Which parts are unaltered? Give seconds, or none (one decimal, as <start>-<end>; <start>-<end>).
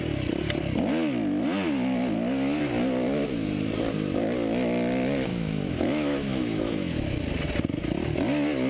0.0-5.3; 7.2-8.7